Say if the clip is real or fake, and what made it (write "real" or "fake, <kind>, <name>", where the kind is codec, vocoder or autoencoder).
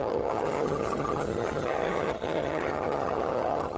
fake, vocoder, HiFi-GAN